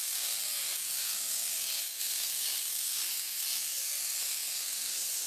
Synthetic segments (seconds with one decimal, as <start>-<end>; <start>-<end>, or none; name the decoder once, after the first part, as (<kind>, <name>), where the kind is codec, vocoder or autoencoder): 0.0-5.3 (codec, SNAC)